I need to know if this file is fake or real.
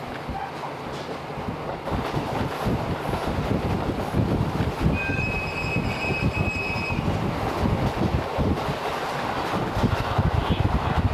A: real